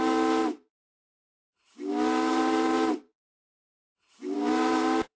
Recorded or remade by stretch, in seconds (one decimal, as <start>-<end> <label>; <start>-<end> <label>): 0.0-0.4 recorded; 0.4-1.9 remade; 1.9-2.3 recorded; 2.3-5.2 remade